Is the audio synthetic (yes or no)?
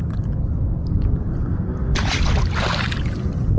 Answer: no